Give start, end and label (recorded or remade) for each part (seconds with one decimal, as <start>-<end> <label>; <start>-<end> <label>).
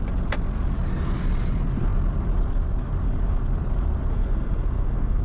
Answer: 0.0-4.1 recorded; 4.1-5.2 remade